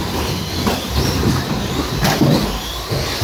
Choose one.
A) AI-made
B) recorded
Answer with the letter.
B